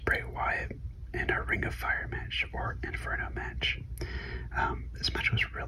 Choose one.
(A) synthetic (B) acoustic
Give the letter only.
B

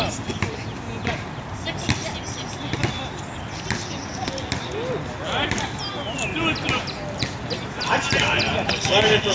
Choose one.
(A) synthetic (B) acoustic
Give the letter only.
B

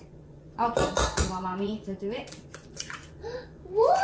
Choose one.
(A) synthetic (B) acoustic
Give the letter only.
A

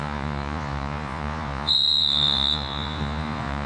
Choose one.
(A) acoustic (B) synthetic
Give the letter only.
B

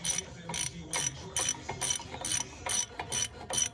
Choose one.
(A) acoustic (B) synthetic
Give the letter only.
A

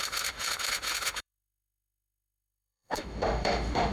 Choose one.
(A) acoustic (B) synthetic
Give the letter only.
B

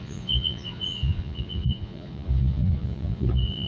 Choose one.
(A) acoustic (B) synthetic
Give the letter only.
B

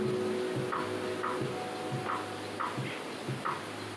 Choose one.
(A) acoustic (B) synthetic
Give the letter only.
A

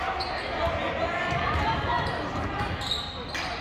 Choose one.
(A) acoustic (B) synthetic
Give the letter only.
A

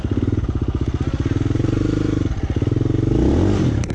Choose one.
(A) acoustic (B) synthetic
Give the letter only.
A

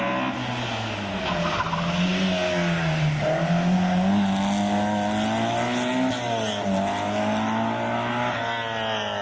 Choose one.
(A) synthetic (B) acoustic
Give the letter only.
B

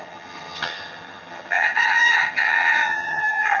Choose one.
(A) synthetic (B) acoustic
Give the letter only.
A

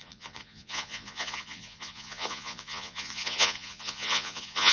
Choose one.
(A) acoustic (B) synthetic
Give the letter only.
B